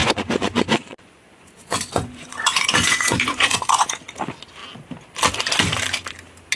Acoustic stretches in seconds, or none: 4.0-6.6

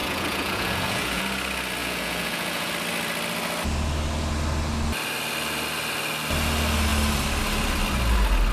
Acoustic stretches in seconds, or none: 1.2-1.8; 2.7-8.5